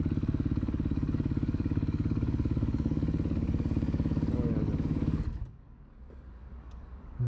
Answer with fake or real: fake